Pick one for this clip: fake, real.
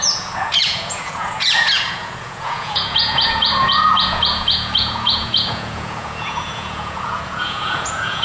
fake